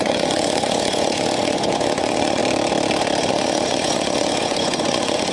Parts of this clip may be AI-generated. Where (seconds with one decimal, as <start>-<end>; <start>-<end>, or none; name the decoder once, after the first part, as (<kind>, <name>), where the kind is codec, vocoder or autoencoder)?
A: 0.0-2.4 (vocoder, Vocos); 3.3-5.3